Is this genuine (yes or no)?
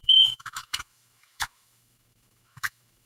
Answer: no